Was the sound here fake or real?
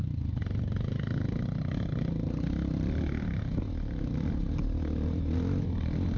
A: real